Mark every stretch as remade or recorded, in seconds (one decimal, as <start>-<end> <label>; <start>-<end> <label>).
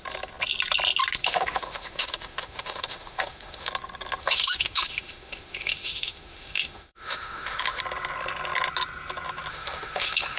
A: 0.0-1.2 recorded; 1.2-3.7 remade; 3.7-4.2 recorded; 4.2-7.8 remade; 7.8-9.5 recorded; 9.5-10.4 remade